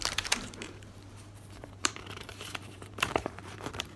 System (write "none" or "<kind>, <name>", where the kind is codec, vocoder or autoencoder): vocoder, BigVGAN v2